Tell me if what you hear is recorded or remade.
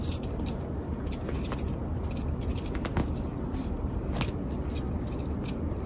recorded